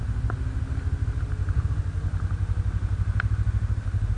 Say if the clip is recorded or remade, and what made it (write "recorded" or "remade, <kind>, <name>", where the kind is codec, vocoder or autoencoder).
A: recorded